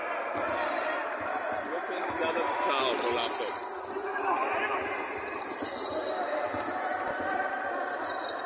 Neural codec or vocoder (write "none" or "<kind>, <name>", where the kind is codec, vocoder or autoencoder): none